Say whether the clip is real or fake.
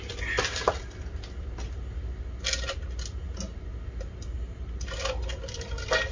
real